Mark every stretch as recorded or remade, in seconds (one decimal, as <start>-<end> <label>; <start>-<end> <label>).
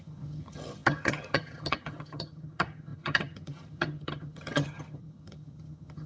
0.0-6.1 remade